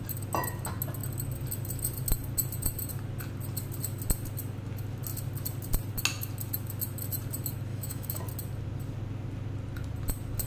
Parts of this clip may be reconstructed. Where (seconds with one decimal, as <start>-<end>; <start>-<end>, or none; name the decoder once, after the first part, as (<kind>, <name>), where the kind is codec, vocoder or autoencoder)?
7.7-8.2 (autoencoder, DAC-VAE)